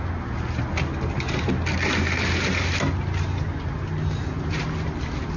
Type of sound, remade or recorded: recorded